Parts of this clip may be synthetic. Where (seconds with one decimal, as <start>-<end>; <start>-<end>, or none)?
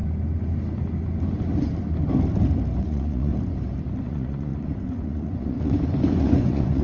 2.8-3.3; 4.0-6.8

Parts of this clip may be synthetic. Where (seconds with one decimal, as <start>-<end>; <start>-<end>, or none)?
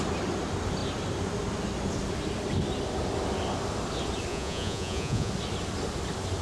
4.3-5.3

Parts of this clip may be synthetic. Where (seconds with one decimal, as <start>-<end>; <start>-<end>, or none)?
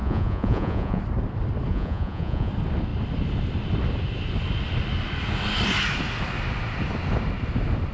0.0-1.0; 1.7-2.5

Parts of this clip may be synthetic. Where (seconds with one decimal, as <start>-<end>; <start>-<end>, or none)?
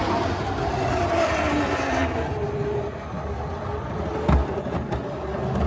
none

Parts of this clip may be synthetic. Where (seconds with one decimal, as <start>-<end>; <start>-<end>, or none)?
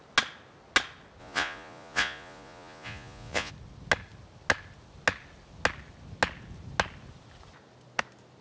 1.2-3.5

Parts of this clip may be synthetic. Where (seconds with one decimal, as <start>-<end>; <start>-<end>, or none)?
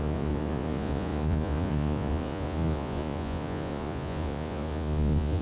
0.0-5.4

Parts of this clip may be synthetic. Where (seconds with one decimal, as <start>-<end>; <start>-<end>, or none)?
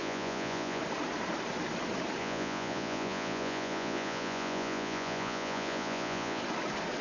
0.0-0.8; 2.2-6.4